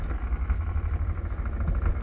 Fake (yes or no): no